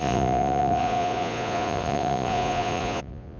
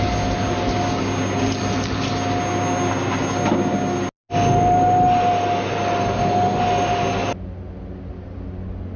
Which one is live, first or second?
second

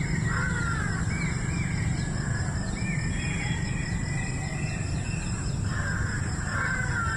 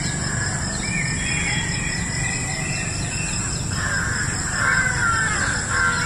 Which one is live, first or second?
second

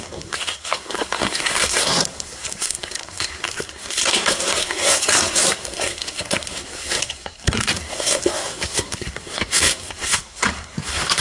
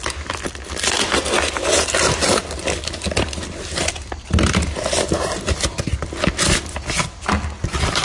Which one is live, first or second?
second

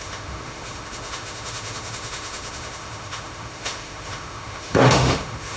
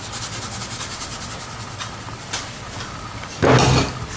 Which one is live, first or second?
second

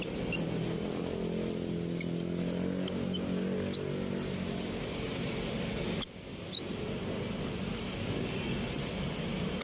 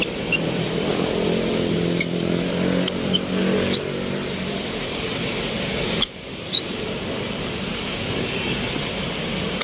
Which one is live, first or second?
first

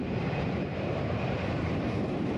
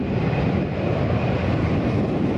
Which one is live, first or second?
second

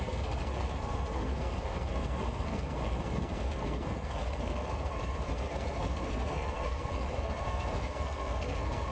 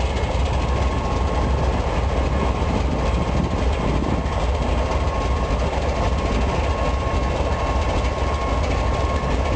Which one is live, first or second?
second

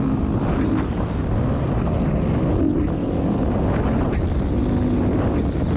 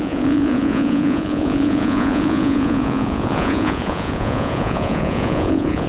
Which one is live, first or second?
first